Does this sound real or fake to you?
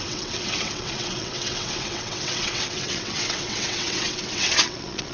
fake